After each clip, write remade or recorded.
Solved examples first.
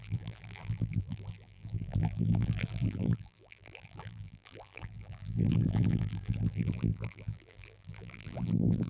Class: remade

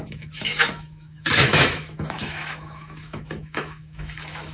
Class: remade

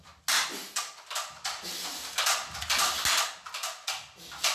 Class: recorded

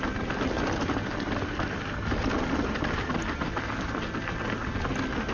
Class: recorded